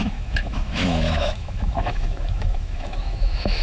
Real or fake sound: fake